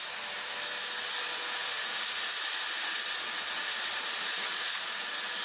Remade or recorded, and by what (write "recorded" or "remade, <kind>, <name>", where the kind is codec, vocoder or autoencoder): recorded